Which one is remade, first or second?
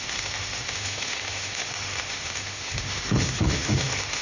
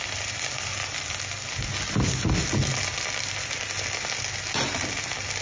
first